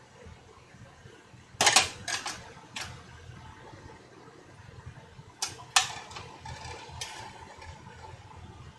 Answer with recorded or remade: recorded